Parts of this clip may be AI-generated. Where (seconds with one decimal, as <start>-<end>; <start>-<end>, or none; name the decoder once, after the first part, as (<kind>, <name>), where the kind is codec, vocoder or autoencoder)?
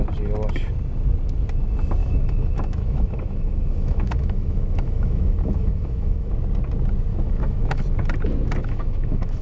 2.0-6.3 (autoencoder, DAC-VAE); 7.1-7.8; 8.6-9.4